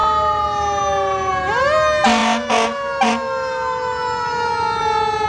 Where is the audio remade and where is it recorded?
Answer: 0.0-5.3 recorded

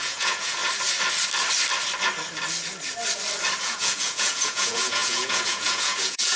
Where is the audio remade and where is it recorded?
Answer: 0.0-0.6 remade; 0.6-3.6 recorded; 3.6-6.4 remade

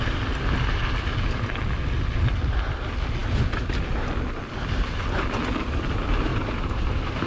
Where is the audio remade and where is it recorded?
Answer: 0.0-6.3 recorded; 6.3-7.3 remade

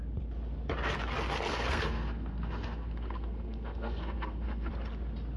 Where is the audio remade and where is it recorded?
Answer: 0.0-1.5 recorded; 1.5-4.7 remade; 4.7-5.4 recorded

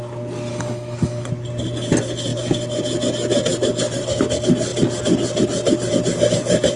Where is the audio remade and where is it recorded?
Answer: 0.0-0.5 recorded; 0.5-1.3 remade; 1.3-6.8 recorded

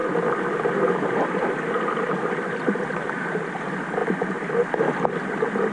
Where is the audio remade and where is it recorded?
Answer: 0.0-3.4 remade; 3.4-5.7 recorded